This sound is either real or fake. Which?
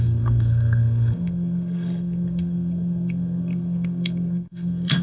fake